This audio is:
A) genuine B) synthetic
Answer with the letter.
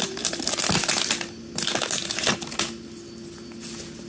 A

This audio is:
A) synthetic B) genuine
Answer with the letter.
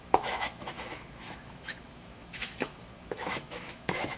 A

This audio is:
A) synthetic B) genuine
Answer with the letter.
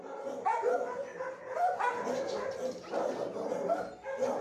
B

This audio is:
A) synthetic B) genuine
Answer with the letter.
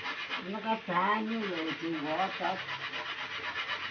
B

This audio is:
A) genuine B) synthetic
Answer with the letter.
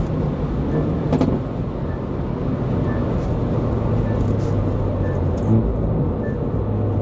A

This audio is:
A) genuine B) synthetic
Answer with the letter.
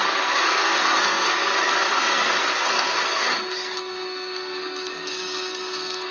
B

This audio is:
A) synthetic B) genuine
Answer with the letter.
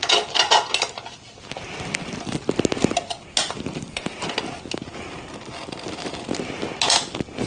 B